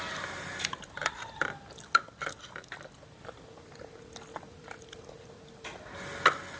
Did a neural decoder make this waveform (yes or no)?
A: no